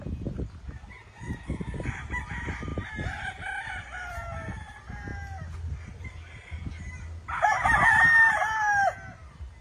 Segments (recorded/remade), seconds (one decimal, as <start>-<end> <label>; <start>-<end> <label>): 0.0-2.7 recorded; 2.7-4.1 remade; 4.1-9.6 recorded